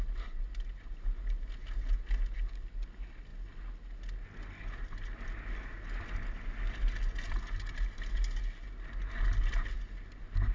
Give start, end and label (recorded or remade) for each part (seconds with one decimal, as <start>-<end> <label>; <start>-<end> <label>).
0.0-10.5 recorded